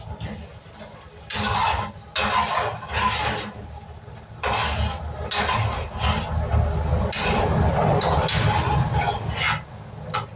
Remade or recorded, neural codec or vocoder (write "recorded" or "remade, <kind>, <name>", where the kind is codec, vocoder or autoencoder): recorded